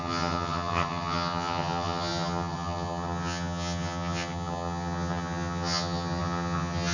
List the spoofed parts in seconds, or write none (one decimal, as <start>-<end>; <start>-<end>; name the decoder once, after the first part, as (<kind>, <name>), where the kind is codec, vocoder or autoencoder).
0.0-6.9 (vocoder, HiFi-GAN)